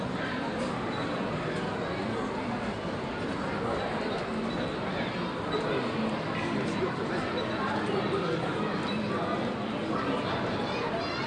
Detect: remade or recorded recorded